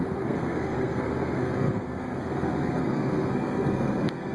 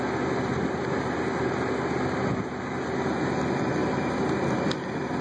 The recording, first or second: second